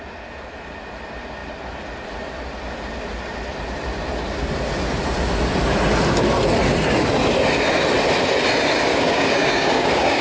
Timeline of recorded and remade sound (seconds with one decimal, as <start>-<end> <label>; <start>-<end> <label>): 0.0-8.9 recorded; 8.9-10.2 remade